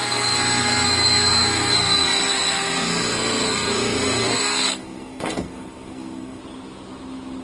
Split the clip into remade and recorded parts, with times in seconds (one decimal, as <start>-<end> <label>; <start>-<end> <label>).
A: 0.0-6.4 remade; 6.4-7.4 recorded